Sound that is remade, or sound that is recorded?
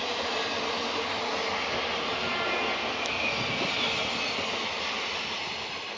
recorded